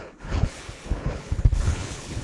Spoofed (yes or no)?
yes